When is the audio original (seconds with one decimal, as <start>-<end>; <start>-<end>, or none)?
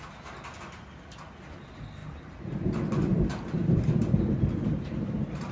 0.0-2.0; 2.5-5.5